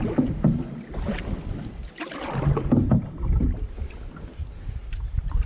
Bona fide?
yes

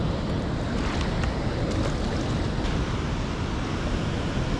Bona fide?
yes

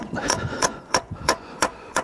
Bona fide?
no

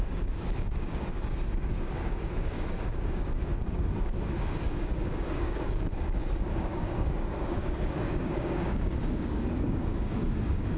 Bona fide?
no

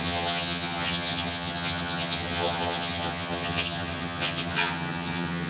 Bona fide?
no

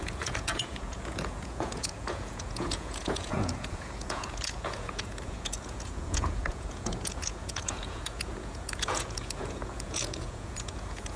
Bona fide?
no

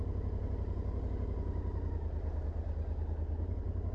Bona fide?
yes